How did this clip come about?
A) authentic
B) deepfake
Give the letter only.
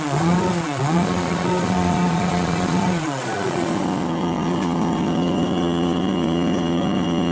B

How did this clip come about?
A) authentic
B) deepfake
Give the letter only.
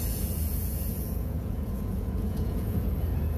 B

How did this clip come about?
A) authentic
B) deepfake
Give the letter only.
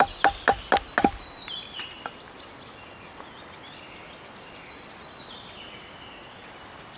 A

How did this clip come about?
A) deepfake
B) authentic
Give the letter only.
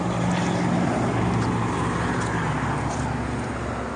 B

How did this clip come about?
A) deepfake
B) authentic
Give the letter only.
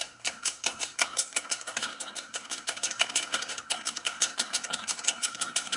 A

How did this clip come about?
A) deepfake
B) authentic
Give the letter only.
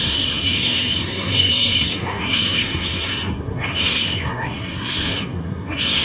A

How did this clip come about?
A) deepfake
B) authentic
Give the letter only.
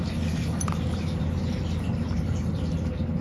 B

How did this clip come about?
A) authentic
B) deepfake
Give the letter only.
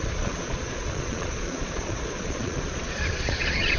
B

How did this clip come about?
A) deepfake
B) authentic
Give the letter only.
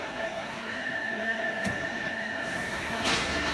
A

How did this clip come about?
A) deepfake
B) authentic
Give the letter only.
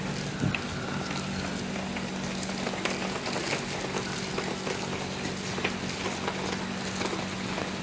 B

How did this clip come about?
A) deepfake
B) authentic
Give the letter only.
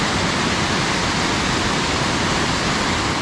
B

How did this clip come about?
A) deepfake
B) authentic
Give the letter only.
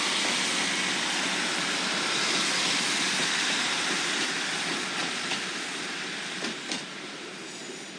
B